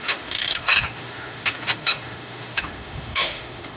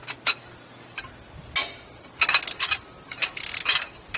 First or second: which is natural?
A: second